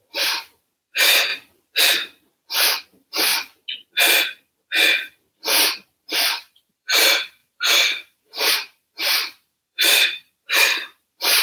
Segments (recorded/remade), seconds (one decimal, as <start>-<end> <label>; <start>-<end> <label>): 0.0-1.3 remade; 1.3-1.8 recorded; 1.8-2.3 remade; 2.3-2.8 recorded; 2.8-3.3 remade; 3.3-6.7 recorded; 6.7-11.4 remade